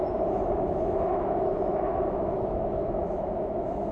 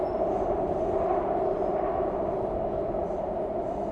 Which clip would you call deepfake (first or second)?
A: first